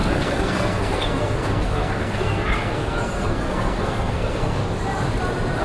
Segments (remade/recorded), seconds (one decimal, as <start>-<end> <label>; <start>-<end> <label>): 0.0-4.6 remade; 4.6-5.6 recorded